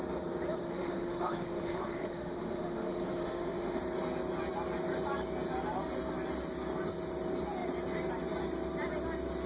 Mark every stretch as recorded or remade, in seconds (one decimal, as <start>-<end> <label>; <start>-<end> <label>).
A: 0.0-0.6 recorded; 0.6-3.8 remade; 3.8-9.5 recorded